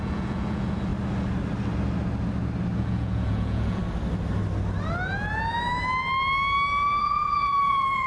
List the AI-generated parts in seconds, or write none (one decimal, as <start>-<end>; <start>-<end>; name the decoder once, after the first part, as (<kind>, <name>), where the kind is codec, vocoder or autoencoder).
0.0-0.9 (vocoder, Vocos); 2.8-3.8; 7.0-8.1